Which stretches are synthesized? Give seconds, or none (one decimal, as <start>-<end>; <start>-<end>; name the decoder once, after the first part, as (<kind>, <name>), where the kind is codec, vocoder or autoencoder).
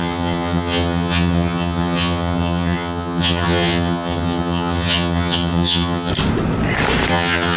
0.0-6.1 (vocoder, HiFi-GAN); 7.1-7.6